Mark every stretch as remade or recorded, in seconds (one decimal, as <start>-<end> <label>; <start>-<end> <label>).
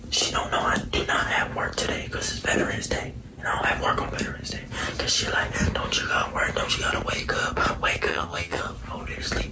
0.0-8.1 recorded; 8.1-8.6 remade; 8.6-9.5 recorded